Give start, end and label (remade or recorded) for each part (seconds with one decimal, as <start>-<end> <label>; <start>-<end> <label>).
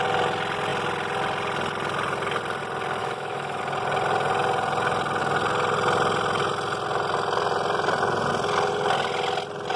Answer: 0.0-3.0 recorded; 3.0-3.6 remade; 3.6-9.8 recorded